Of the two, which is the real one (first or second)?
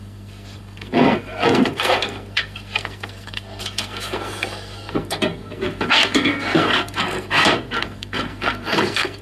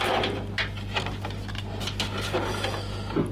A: second